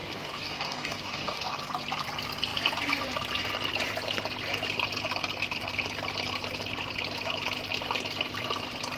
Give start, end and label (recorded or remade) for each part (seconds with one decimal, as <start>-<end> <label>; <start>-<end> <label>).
0.0-1.6 remade; 1.6-9.0 recorded

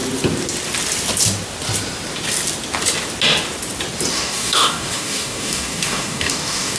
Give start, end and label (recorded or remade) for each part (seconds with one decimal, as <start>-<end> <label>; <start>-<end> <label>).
0.0-4.1 recorded; 4.1-6.8 remade

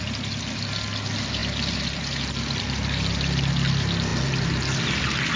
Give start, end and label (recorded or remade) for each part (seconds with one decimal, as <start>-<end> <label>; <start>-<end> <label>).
0.0-5.4 recorded

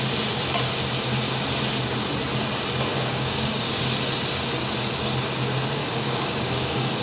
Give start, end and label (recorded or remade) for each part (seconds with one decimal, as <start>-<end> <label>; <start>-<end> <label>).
0.0-2.9 recorded; 2.9-3.8 remade; 3.8-5.8 recorded; 5.8-7.0 remade

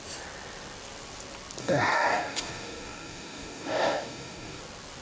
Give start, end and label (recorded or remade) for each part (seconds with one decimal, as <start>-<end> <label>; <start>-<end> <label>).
0.0-1.6 recorded; 1.6-4.6 remade; 4.6-5.0 recorded